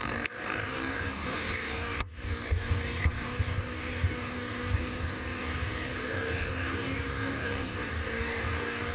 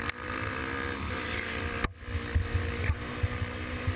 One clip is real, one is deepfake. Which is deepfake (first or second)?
first